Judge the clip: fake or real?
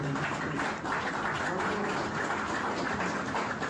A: real